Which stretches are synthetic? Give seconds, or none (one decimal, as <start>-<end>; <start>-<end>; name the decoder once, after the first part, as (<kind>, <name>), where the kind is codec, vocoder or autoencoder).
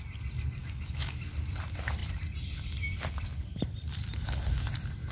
0.6-1.2 (codec, DAC)